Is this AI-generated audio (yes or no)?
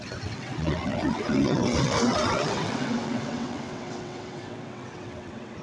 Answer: yes